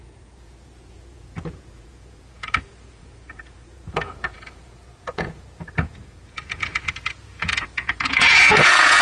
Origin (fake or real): fake